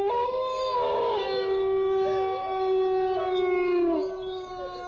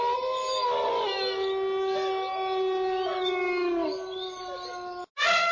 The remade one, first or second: first